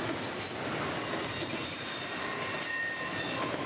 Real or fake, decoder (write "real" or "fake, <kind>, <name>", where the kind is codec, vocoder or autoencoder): real